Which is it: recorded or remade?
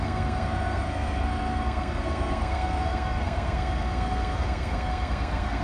remade